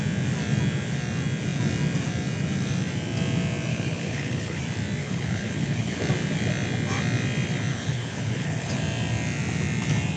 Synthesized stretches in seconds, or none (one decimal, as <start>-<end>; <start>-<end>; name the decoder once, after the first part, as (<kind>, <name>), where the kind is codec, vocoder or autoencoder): 3.7-4.6 (codec, HILCodec); 5.0-6.0; 7.7-8.8